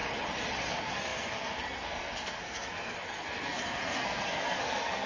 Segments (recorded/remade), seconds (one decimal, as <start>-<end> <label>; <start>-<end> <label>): 0.0-0.7 recorded; 0.7-5.1 remade